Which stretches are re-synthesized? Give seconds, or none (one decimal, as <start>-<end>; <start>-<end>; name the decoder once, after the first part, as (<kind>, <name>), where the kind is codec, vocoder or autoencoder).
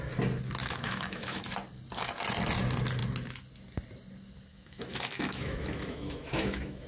0.6-1.4 (autoencoder, DAC-VAE); 4.5-6.9